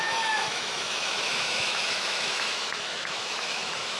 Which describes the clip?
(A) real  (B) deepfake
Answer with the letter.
B